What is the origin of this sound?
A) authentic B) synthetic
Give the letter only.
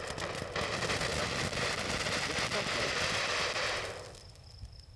A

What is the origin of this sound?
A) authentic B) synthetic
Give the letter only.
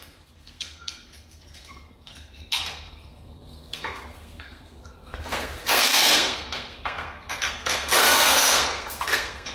B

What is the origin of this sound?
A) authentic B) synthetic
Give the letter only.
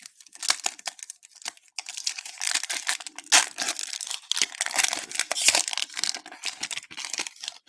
A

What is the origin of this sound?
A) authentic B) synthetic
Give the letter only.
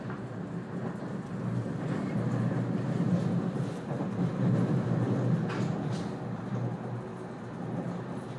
A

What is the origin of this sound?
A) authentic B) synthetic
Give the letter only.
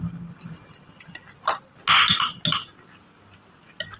A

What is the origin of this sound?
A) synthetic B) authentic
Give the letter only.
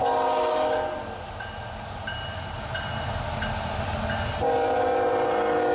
B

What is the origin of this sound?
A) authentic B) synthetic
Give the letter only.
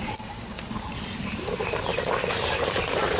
A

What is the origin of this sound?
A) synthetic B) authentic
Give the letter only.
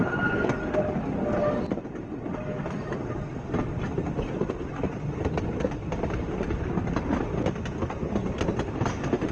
B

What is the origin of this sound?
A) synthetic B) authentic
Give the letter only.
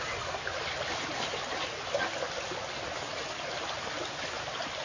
B